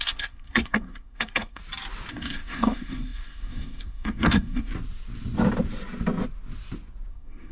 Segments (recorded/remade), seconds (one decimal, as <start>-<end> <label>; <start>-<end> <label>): 0.0-1.6 remade; 1.6-2.1 recorded; 2.1-4.7 remade; 4.7-7.1 recorded; 7.1-7.5 remade